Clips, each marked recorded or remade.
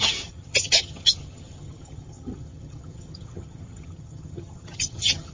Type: remade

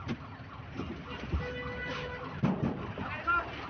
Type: recorded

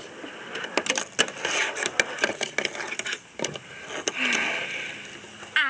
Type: recorded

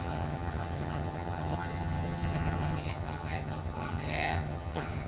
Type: remade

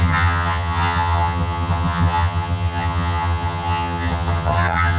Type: remade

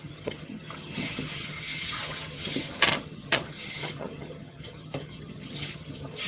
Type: remade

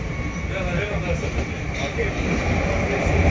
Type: recorded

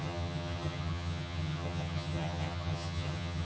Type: remade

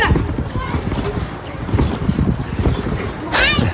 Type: recorded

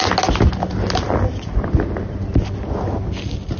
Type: recorded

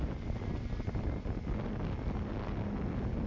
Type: recorded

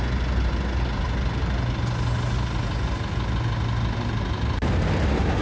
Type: recorded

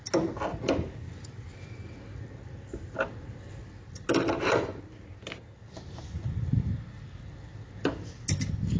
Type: recorded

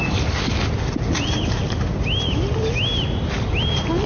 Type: recorded